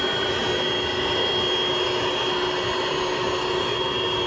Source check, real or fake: real